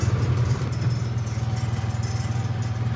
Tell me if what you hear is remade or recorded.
recorded